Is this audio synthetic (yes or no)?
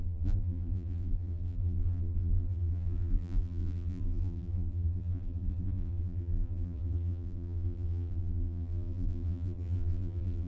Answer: yes